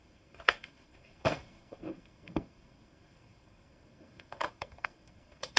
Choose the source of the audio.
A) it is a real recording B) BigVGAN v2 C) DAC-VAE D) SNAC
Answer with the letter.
D